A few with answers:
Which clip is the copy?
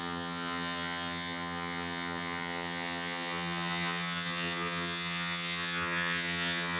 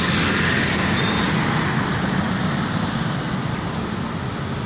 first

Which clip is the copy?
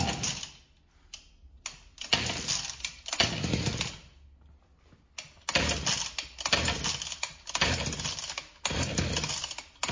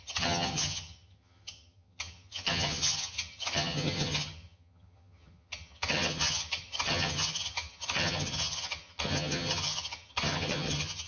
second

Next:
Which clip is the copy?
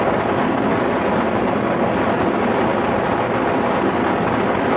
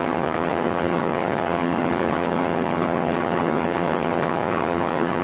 second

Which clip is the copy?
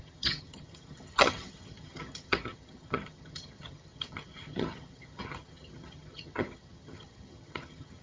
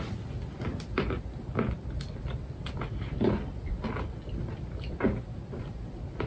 first